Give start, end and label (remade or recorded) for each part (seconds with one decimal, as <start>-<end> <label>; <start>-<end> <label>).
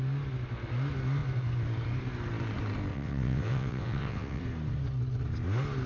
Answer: 0.0-2.9 recorded; 2.9-4.4 remade; 4.4-5.9 recorded